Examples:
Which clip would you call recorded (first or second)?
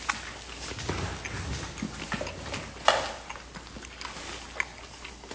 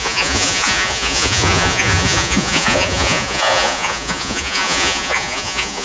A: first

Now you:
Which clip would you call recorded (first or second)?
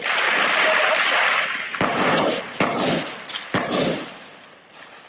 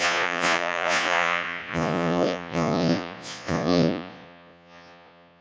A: first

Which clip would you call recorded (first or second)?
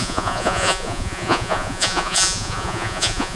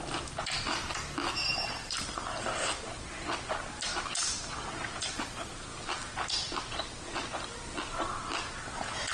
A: second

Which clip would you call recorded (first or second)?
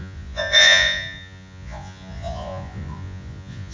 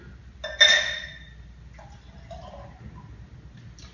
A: second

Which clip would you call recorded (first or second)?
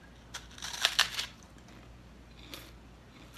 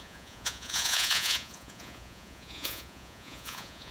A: first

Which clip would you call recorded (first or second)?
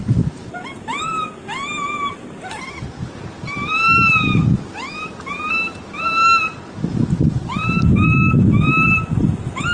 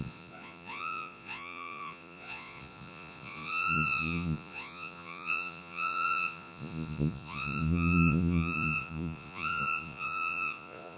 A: first